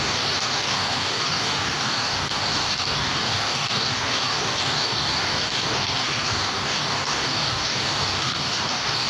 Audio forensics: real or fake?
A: fake